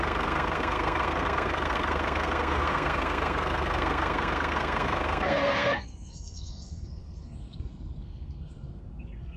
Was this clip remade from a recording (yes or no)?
yes